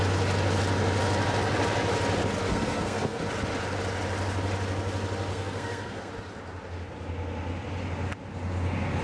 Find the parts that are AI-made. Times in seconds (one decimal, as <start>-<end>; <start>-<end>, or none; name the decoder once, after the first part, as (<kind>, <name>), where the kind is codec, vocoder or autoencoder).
2.5-3.2 (codec, SNAC); 5.3-6.1